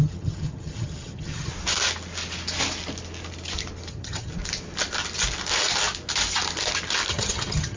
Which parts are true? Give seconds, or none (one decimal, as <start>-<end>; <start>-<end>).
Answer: 1.5-3.9; 4.3-7.1